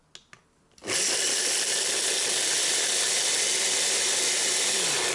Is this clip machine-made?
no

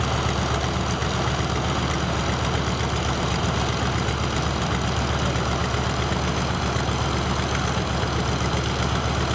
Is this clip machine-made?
no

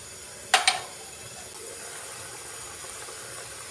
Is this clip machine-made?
no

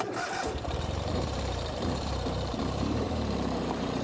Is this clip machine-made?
yes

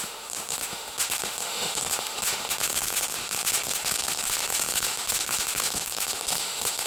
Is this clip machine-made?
yes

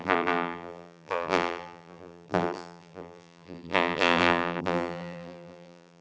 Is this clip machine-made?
yes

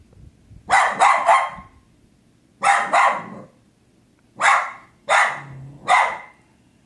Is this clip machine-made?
no